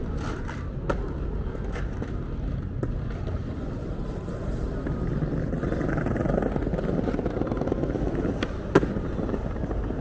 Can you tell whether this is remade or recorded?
recorded